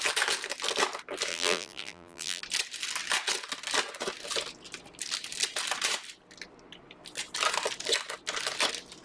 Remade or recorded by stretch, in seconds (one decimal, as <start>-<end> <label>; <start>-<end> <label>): 0.0-1.3 recorded; 1.3-2.4 remade; 2.4-9.0 recorded

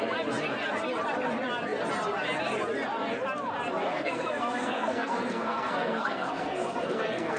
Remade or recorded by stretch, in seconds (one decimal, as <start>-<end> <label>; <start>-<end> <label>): 0.0-3.8 recorded; 3.8-7.4 remade